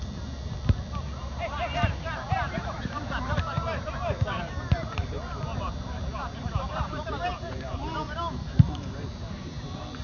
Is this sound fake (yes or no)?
yes